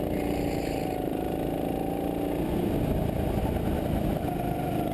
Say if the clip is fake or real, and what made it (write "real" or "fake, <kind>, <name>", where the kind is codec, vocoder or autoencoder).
real